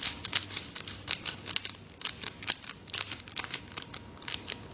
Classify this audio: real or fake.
real